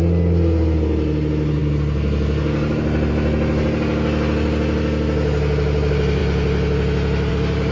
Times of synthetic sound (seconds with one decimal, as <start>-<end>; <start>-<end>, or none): none

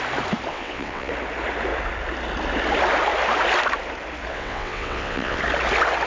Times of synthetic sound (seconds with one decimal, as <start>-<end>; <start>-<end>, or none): 0.5-1.1; 4.3-5.4